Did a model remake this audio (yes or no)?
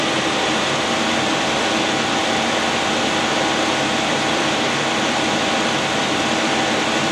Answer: yes